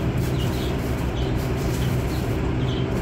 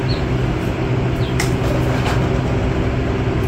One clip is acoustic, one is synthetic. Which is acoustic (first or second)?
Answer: second